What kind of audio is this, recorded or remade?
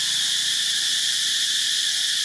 recorded